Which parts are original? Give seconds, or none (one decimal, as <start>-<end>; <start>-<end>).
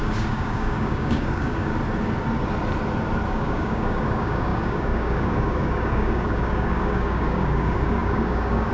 1.7-3.3